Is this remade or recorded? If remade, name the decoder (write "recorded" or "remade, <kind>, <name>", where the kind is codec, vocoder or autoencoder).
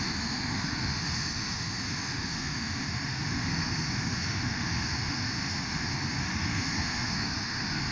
remade, autoencoder, DAC-VAE